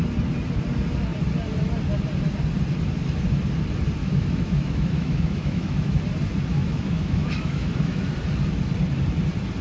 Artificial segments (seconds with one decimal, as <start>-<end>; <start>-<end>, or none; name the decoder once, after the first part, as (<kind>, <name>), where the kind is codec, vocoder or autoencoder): 4.0-6.0 (autoencoder, DAC-VAE); 6.5-8.0